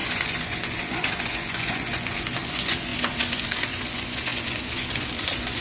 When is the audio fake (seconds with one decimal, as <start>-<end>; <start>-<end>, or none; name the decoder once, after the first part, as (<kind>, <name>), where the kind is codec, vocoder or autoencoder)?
0.0-5.6 (vocoder, Vocos)